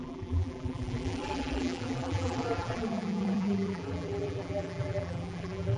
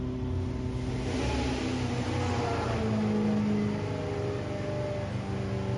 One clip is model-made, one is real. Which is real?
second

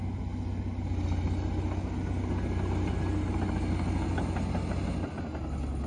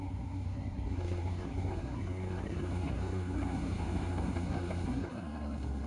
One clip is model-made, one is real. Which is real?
first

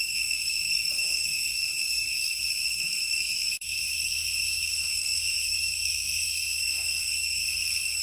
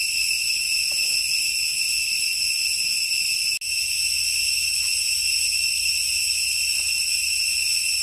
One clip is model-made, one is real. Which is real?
second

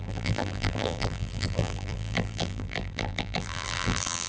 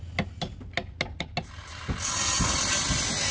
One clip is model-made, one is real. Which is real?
second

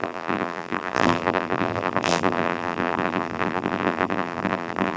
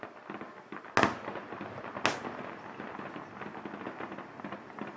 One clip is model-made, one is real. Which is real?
second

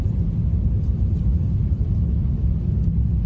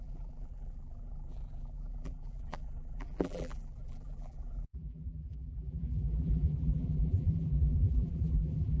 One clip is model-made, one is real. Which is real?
first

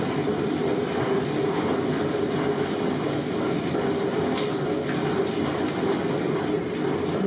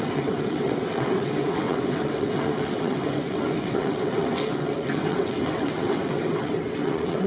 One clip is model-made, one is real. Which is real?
first